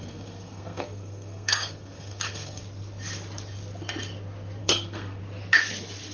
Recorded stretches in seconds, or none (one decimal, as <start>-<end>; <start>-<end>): 2.6-4.6; 5.2-6.1